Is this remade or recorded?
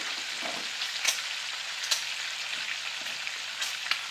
recorded